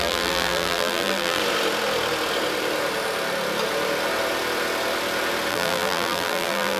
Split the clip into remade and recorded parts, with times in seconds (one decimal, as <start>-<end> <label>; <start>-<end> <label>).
0.0-1.4 remade; 1.4-5.5 recorded; 5.5-6.8 remade